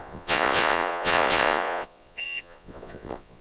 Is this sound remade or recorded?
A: remade